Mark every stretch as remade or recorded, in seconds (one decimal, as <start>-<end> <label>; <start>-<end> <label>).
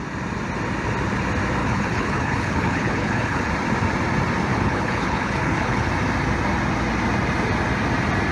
0.0-1.6 recorded; 1.6-3.5 remade; 3.5-4.5 recorded; 4.5-5.9 remade; 5.9-8.3 recorded